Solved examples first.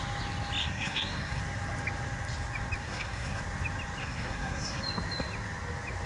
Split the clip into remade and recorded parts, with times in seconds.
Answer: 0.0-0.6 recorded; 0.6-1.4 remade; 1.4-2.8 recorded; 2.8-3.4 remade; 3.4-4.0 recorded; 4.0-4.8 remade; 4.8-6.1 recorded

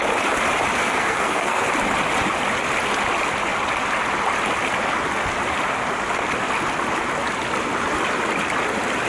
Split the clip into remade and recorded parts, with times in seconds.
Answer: 0.0-0.8 recorded; 0.8-1.7 remade; 1.7-9.1 recorded

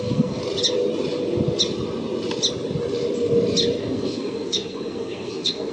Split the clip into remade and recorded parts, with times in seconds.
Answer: 0.0-0.4 remade; 0.4-3.8 recorded; 3.8-5.7 remade

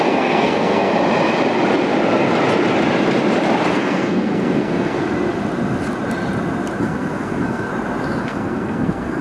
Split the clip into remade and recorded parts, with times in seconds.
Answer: 0.0-0.9 remade; 0.9-3.7 recorded; 3.7-5.0 remade; 5.0-6.8 recorded; 6.8-7.7 remade; 7.7-8.2 recorded; 8.2-9.2 remade

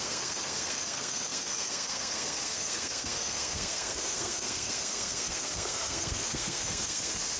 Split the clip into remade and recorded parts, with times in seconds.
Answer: 0.0-7.4 remade

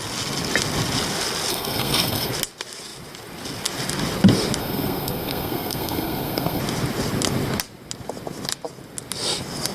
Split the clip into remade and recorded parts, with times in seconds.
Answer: 0.0-1.5 recorded; 1.5-2.3 remade; 2.3-4.6 recorded; 4.6-6.6 remade; 6.6-9.7 recorded

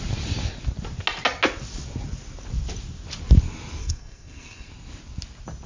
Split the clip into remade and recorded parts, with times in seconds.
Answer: 0.0-3.8 recorded; 3.8-4.7 remade; 4.7-5.7 recorded